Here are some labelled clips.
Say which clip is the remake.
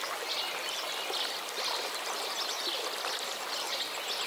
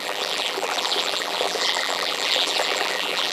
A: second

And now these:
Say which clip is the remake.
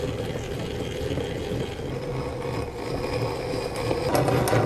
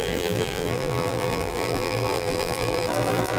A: second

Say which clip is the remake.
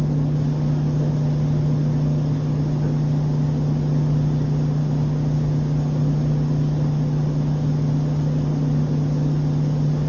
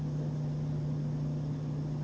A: second